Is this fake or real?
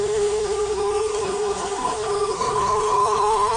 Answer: fake